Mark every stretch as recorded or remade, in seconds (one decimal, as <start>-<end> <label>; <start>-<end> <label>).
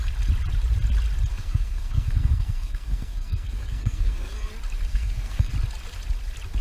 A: 0.0-1.3 recorded; 1.3-4.5 remade; 4.5-4.9 recorded; 4.9-5.5 remade; 5.5-6.6 recorded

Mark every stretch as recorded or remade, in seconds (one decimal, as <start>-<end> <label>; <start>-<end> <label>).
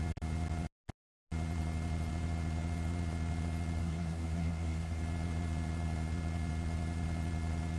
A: 0.0-3.8 recorded; 3.8-5.0 remade; 5.0-7.8 recorded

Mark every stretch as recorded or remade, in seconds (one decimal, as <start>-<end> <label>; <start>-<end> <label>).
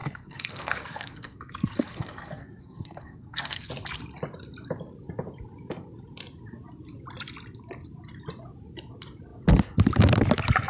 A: 0.0-3.7 remade; 3.7-10.7 recorded